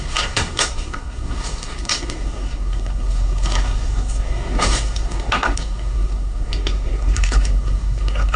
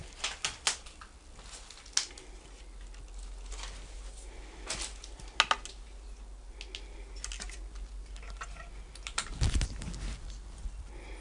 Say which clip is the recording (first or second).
second